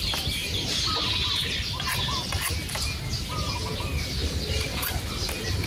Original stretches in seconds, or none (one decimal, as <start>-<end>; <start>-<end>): 0.4-3.8